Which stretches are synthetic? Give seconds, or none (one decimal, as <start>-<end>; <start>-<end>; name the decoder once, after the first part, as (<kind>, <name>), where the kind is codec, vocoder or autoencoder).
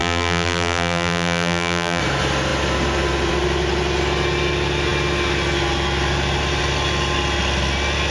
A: 0.0-2.0 (vocoder, BigVGAN v2)